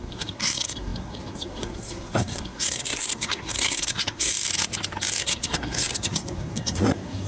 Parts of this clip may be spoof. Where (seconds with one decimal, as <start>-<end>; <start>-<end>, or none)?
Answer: 0.0-4.3; 5.2-7.3